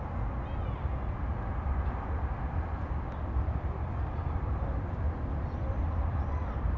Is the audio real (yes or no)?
no